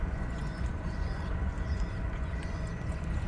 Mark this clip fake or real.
fake